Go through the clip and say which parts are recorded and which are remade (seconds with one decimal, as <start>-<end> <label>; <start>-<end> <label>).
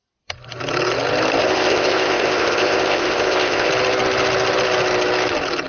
0.0-1.4 recorded; 1.4-3.7 remade; 3.7-5.7 recorded